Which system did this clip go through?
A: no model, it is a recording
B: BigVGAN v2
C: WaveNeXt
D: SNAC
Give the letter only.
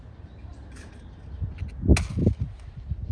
A